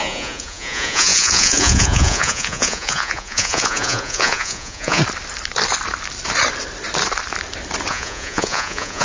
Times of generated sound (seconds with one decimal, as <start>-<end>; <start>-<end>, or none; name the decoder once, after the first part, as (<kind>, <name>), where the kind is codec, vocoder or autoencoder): 0.0-5.0 (vocoder, Vocos); 7.9-9.0